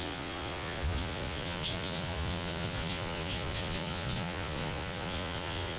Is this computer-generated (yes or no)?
yes